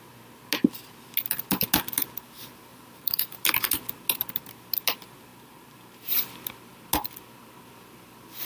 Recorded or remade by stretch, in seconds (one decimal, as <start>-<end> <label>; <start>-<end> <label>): 0.0-2.7 recorded; 2.7-3.4 remade; 3.4-5.3 recorded; 5.3-6.3 remade; 6.3-8.4 recorded